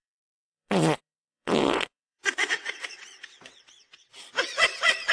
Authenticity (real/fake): fake